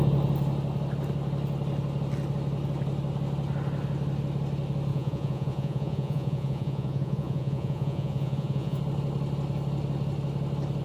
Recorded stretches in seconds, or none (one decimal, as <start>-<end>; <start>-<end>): 0.0-4.9; 8.8-10.8